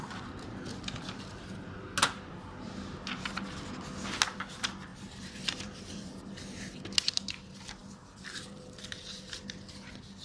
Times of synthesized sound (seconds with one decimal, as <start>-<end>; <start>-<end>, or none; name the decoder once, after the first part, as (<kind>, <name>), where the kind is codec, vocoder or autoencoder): 4.9-6.6 (vocoder, BigVGAN v2); 7.8-9.1